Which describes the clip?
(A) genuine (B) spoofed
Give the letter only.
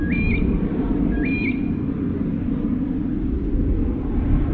A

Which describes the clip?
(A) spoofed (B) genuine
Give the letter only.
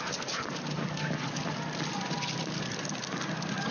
B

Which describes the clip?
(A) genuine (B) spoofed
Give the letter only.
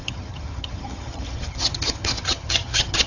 B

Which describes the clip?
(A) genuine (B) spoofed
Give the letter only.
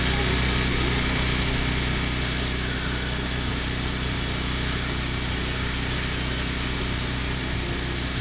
A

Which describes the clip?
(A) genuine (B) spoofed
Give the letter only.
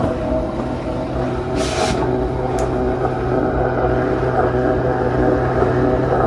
A